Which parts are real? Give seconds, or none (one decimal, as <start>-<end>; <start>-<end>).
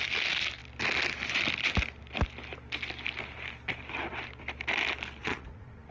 0.0-5.2